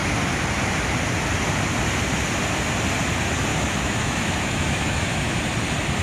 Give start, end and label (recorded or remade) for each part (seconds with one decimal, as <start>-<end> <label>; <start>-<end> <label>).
0.0-3.5 recorded; 3.5-5.4 remade; 5.4-6.0 recorded

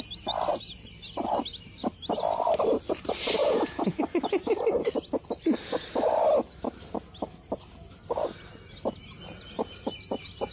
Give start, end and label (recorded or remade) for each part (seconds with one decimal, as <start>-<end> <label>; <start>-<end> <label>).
0.0-3.4 recorded; 3.4-4.0 remade; 4.0-10.5 recorded

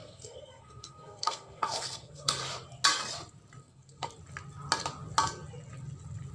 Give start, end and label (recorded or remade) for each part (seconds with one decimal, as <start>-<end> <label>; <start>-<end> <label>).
0.0-2.4 remade; 2.4-3.6 recorded; 3.6-4.1 remade; 4.1-6.3 recorded